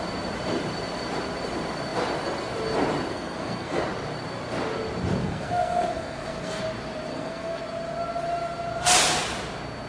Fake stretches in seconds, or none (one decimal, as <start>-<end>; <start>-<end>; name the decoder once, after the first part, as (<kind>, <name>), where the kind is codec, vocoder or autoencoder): 3.1-3.8 (codec, SNAC); 5.2-6.6; 7.1-7.6